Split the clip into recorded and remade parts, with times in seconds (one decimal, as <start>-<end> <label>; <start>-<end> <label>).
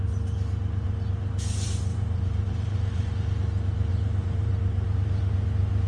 0.0-1.9 recorded; 1.9-3.1 remade; 3.1-3.9 recorded; 3.9-4.5 remade; 4.5-5.9 recorded